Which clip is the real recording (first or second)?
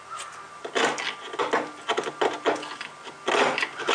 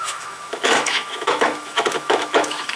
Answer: first